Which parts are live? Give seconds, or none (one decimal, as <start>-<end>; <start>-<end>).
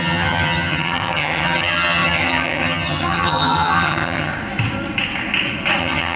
4.3-5.8